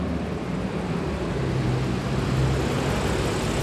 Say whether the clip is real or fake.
real